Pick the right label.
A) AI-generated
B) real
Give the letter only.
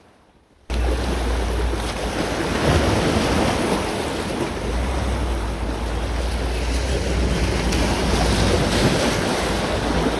B